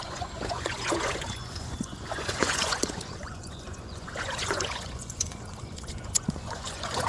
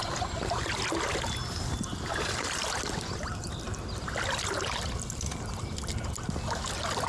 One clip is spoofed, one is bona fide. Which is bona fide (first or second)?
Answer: second